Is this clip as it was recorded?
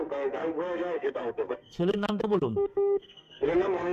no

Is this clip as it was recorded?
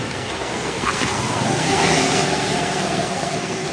no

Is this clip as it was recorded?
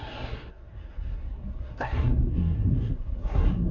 no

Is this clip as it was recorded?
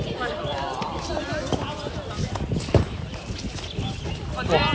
yes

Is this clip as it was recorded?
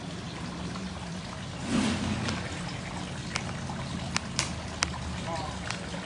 yes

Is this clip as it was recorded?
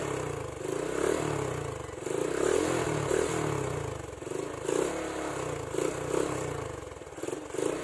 yes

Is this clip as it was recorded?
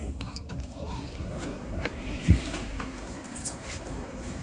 no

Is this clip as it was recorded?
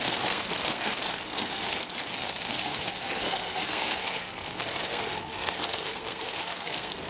no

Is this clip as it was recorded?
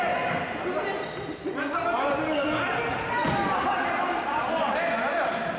yes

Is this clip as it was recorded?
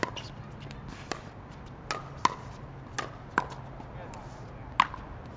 yes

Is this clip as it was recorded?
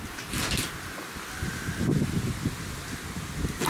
yes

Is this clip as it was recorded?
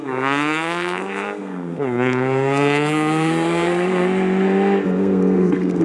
no